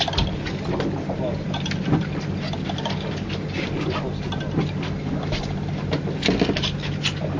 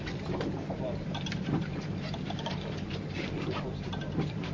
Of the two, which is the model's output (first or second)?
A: second